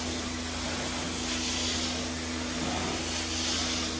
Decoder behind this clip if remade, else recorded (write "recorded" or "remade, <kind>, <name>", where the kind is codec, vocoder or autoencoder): recorded